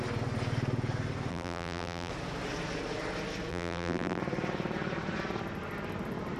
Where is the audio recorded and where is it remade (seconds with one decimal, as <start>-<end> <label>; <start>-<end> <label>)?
0.0-1.3 recorded; 1.3-2.1 remade; 2.1-3.5 recorded; 3.5-4.2 remade; 4.2-6.4 recorded